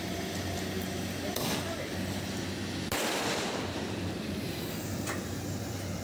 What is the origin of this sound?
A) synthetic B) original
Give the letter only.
B